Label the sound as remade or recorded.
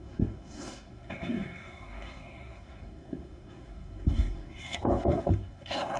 remade